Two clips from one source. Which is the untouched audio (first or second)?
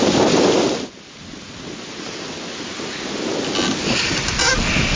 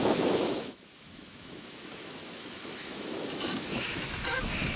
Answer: first